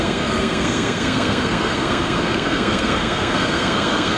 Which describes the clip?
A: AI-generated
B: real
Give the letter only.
A